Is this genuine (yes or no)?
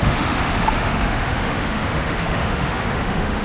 no